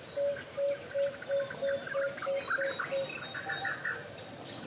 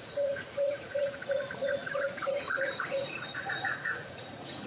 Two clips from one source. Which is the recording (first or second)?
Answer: first